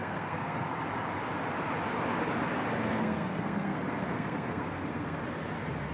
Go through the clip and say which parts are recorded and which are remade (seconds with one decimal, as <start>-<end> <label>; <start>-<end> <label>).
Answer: 0.0-0.7 remade; 0.7-2.9 recorded; 2.9-5.2 remade; 5.2-5.9 recorded